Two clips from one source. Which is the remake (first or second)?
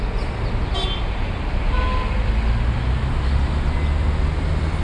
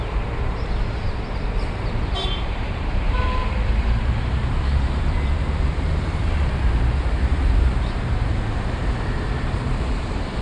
second